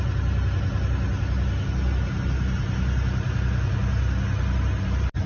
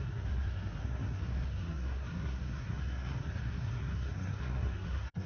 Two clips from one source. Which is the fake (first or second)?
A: second